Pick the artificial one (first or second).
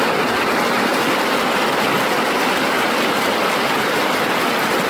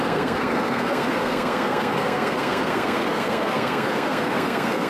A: second